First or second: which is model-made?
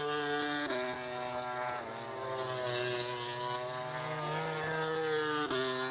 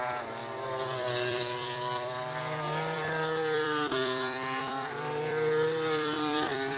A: second